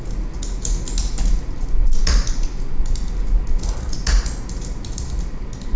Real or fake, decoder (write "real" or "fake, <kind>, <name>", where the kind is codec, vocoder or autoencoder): real